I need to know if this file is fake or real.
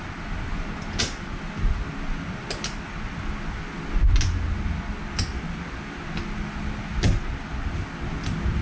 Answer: real